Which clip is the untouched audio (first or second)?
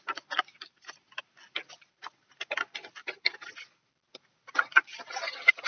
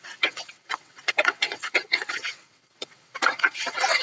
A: first